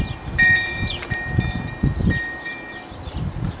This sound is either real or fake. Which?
real